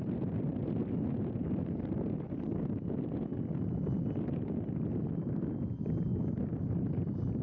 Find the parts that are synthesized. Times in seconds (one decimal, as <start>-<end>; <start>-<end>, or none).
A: 0.8-1.6; 3.3-6.0